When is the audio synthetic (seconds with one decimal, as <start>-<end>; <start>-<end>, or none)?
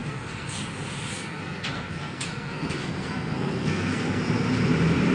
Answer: 0.0-0.6; 1.1-4.2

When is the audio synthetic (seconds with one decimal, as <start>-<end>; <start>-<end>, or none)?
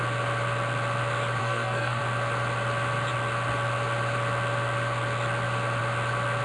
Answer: 1.4-2.0